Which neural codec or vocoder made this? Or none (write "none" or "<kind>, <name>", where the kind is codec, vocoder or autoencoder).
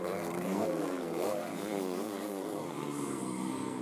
codec, SNAC